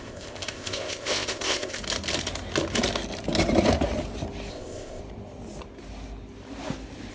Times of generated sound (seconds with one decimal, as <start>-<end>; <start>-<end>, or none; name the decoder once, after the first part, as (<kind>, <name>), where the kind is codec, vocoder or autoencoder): 0.0-1.8 (codec, ZipCodec); 4.5-5.0